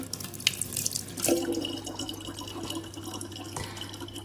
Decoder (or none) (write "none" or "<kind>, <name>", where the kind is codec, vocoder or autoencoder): none